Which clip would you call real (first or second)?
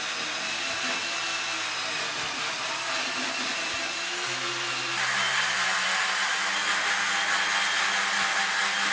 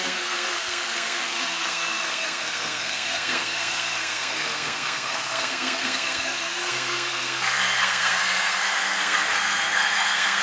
first